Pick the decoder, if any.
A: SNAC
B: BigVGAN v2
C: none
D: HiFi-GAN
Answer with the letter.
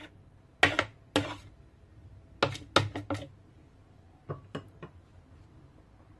C